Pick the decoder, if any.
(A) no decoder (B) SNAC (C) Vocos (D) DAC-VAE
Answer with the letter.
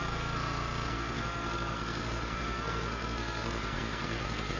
B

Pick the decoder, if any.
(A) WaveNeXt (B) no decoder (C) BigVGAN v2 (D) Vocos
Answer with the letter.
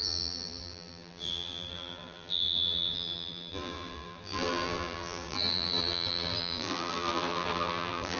C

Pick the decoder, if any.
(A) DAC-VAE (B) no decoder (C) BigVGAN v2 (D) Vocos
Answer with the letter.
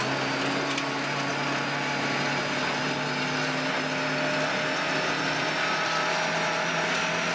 B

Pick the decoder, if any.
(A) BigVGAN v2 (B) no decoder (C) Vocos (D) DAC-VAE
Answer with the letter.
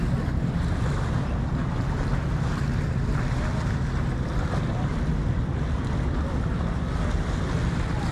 B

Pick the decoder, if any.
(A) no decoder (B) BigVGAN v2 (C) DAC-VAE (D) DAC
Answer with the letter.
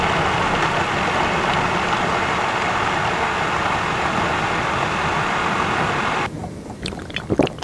A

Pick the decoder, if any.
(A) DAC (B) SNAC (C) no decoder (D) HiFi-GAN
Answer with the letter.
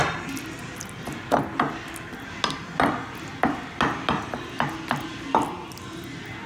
C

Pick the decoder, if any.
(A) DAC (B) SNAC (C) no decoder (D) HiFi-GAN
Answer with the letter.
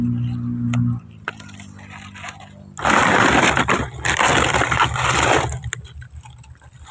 C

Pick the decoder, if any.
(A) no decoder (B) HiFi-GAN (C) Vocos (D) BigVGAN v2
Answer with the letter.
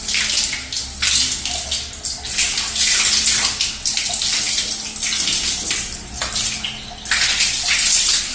A